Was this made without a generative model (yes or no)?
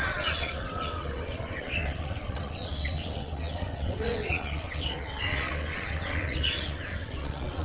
no